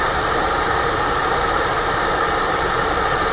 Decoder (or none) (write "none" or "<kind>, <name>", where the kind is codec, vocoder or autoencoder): vocoder, BigVGAN v2